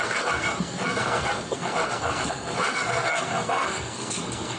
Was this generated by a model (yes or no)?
yes